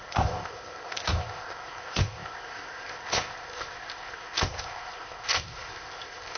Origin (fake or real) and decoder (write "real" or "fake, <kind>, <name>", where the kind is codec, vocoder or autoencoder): fake, codec, ZipCodec